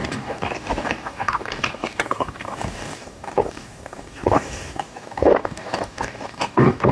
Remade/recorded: remade